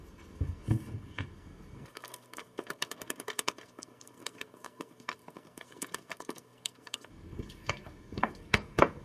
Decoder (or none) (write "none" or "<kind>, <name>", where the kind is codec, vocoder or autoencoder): codec, SNAC